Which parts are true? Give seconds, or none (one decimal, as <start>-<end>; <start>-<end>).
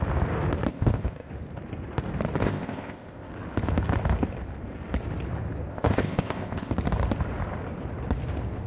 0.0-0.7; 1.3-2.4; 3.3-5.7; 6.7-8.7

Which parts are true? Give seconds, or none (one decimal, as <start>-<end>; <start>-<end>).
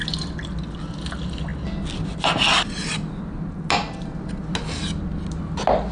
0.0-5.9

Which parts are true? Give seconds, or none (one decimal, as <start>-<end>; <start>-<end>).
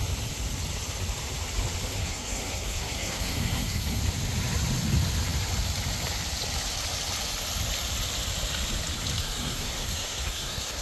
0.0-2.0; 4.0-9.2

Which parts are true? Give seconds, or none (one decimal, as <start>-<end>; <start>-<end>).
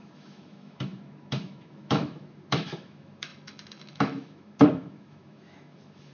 none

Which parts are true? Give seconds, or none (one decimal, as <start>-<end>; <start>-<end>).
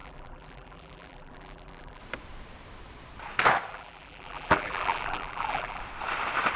2.0-3.7; 5.8-6.6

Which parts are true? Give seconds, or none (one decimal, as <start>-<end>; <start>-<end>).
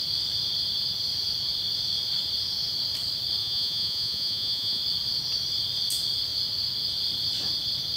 0.0-3.4; 4.8-8.0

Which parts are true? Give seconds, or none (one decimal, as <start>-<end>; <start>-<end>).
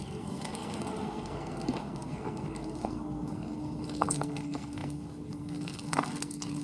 none